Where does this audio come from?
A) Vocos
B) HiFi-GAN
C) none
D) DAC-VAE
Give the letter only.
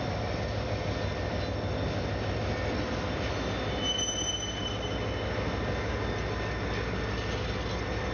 C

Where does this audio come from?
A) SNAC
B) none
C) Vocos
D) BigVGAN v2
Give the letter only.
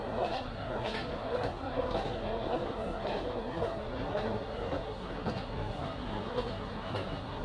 A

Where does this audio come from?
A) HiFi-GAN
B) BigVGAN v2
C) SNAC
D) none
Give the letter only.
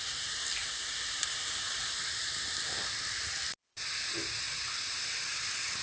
D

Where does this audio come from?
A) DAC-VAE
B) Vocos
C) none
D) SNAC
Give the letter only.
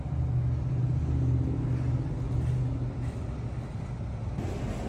C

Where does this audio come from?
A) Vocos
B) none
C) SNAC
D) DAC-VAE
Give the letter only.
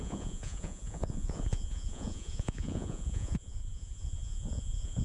A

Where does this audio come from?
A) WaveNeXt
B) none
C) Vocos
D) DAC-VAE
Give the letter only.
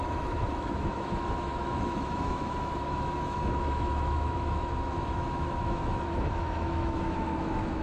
D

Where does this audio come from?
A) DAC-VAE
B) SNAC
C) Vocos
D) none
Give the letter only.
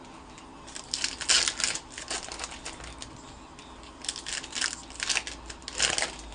D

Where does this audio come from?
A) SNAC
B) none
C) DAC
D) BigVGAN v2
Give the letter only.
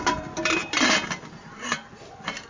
B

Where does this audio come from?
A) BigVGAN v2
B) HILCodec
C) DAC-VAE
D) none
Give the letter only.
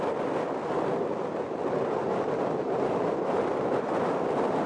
D